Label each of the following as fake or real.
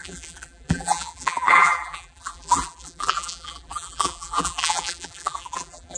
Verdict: fake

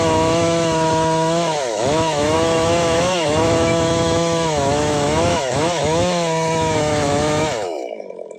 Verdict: fake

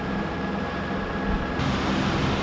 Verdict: real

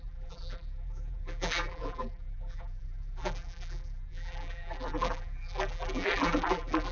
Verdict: fake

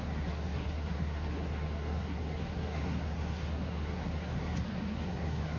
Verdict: fake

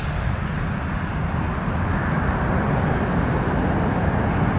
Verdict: real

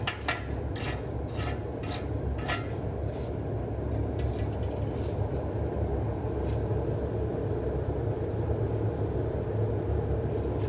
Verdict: real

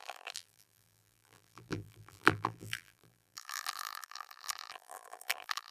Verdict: fake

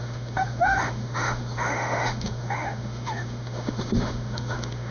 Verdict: fake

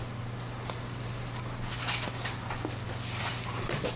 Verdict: real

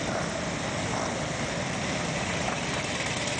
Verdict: real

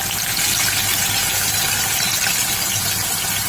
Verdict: real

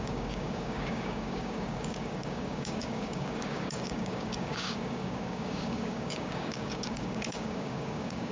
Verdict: fake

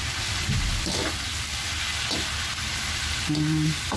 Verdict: real